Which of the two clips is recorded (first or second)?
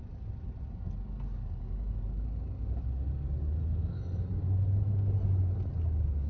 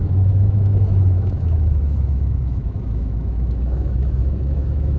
first